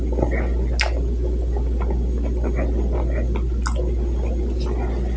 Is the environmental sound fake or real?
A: real